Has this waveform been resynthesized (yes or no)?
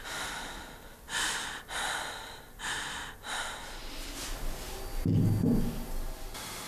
no